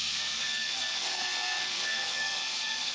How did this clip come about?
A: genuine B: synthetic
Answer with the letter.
B